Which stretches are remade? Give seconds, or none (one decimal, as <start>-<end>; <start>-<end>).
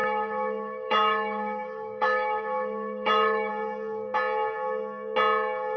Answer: 0.0-3.5